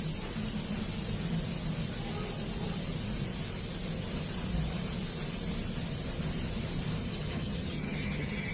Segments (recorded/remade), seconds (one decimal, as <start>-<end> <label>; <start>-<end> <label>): 0.0-7.1 recorded; 7.1-8.5 remade